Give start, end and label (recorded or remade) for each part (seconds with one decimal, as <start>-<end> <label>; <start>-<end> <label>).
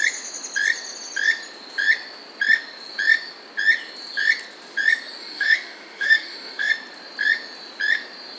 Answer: 0.0-5.2 recorded; 5.2-6.7 remade; 6.7-8.4 recorded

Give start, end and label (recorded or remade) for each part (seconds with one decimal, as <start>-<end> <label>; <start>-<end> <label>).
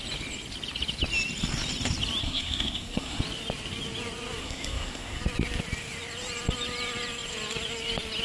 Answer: 0.0-2.2 recorded; 2.2-3.2 remade; 3.2-4.4 recorded; 4.4-5.2 remade; 5.2-8.2 recorded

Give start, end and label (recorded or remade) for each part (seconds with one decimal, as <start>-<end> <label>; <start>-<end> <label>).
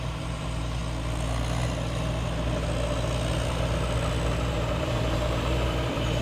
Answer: 0.0-0.8 remade; 0.8-4.5 recorded; 4.5-6.2 remade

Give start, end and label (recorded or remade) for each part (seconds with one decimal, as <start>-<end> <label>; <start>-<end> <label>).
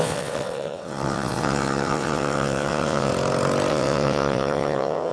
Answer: 0.0-3.1 remade; 3.1-3.7 recorded; 3.7-5.1 remade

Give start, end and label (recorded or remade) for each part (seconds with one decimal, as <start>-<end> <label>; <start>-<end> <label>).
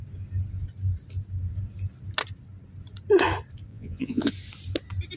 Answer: 0.0-3.7 recorded; 3.7-4.3 remade; 4.3-5.2 recorded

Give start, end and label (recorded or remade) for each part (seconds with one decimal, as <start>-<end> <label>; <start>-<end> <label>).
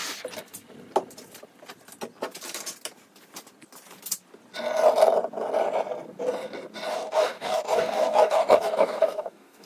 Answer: 0.0-6.9 recorded; 6.9-9.7 remade